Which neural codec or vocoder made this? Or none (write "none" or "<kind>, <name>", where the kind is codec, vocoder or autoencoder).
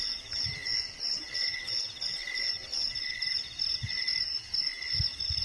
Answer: none